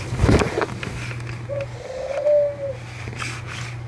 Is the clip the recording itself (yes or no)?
yes